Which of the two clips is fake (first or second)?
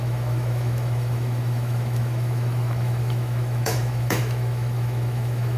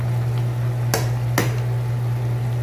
first